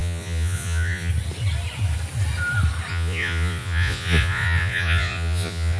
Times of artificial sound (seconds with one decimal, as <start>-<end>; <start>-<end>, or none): 0.0-1.1; 2.9-5.8